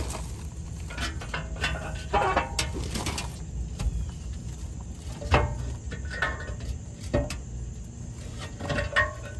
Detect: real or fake real